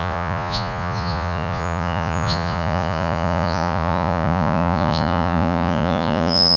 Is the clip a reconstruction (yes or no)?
yes